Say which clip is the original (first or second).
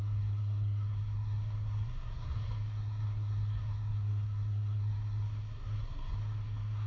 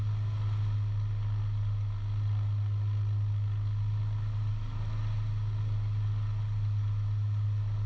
second